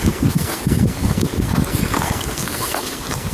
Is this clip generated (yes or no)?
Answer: yes